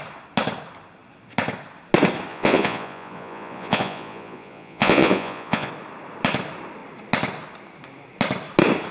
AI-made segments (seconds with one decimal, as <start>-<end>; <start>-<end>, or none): 2.3-5.7